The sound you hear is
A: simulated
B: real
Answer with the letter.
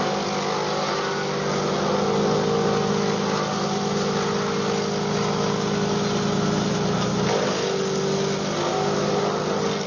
B